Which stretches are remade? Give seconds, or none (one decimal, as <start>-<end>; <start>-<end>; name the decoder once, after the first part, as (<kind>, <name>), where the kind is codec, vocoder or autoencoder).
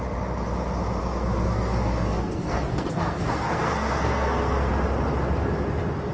1.0-4.7 (codec, SNAC)